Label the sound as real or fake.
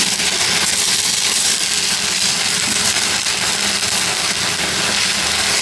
real